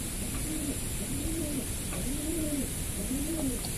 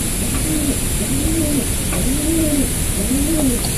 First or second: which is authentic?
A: second